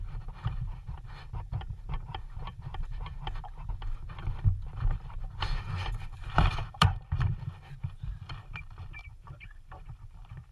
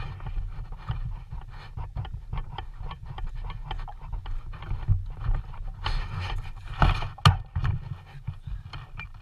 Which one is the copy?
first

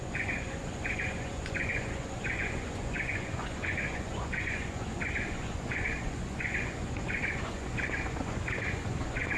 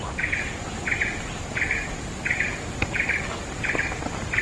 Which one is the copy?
first